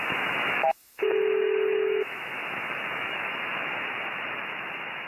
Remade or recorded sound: remade